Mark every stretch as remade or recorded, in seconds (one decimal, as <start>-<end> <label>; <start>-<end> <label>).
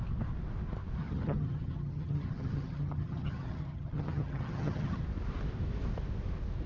0.0-1.0 recorded; 1.0-5.0 remade; 5.0-6.7 recorded